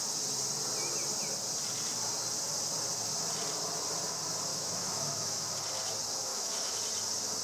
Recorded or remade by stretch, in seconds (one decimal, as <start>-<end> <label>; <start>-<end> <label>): 0.0-4.5 recorded; 4.5-5.5 remade; 5.5-6.3 recorded; 6.3-6.8 remade; 6.8-7.4 recorded